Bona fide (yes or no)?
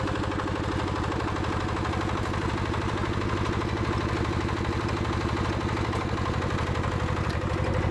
yes